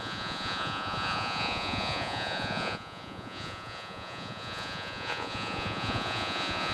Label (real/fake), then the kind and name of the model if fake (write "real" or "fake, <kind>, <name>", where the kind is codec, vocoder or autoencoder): fake, vocoder, Vocos